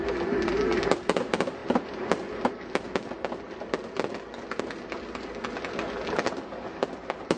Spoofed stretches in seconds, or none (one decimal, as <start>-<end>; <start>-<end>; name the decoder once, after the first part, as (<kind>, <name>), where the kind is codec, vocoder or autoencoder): none